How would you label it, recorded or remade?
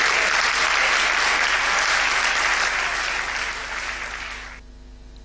recorded